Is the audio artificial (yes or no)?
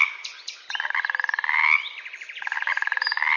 no